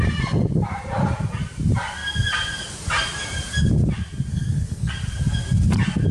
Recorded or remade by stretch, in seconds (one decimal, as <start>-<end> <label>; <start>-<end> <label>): 0.0-4.3 recorded; 4.3-4.9 remade; 4.9-6.1 recorded